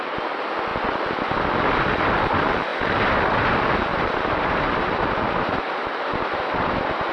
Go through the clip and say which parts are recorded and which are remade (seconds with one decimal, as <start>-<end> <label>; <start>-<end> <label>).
0.0-3.9 recorded; 3.9-7.1 remade